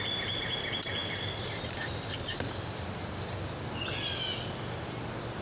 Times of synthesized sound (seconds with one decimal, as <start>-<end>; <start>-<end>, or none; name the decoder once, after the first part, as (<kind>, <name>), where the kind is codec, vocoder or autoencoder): none